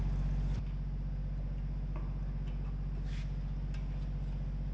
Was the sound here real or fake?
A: real